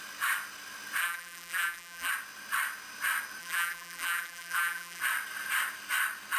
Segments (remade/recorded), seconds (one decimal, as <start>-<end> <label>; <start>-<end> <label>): 0.0-1.0 recorded; 1.0-2.1 remade; 2.1-3.4 recorded; 3.4-5.0 remade; 5.0-6.4 recorded